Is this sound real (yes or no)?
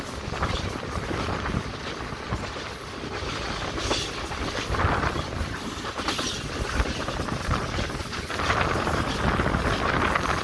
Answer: yes